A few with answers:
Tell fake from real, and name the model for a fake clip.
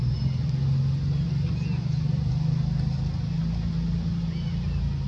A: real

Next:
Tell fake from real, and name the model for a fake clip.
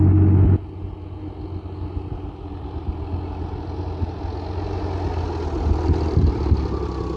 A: real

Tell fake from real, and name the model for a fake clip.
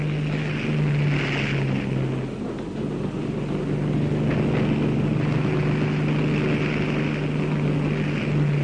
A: real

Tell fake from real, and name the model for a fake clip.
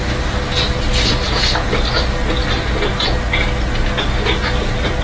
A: real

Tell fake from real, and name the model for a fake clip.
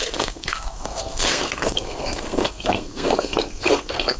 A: fake, codec, SNAC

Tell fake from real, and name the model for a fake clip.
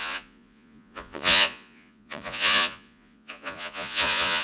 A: fake, vocoder, Vocos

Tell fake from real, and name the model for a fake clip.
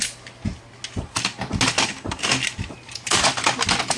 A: real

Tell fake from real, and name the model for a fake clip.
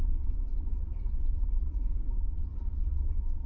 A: fake, vocoder, WaveNeXt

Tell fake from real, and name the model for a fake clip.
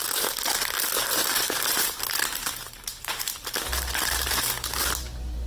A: fake, vocoder, BigVGAN v2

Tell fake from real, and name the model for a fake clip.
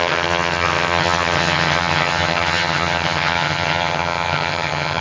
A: fake, vocoder, HiFi-GAN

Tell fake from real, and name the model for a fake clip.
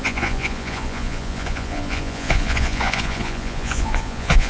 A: fake, vocoder, Vocos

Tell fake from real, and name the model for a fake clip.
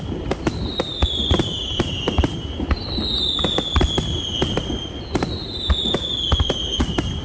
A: real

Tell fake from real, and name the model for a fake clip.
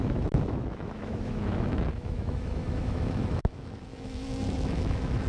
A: fake, autoencoder, DAC-VAE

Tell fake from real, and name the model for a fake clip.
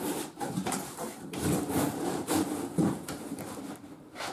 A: fake, vocoder, BigVGAN v2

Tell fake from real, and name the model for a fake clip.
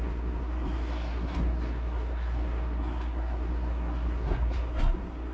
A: fake, codec, SNAC